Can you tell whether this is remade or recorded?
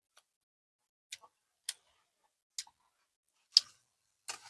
recorded